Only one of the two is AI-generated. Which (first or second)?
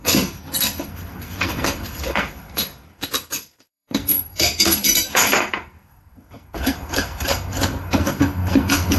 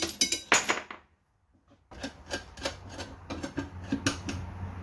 first